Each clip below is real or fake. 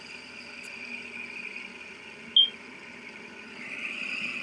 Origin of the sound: real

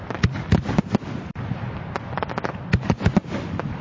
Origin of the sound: real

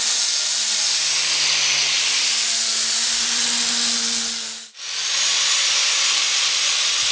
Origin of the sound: real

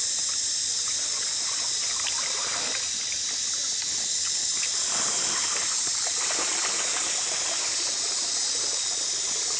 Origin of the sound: real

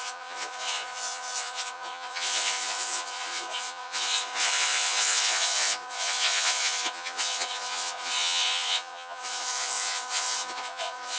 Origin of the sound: fake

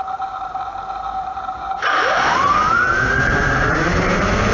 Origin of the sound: fake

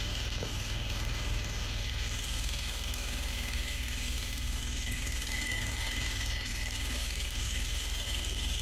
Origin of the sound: fake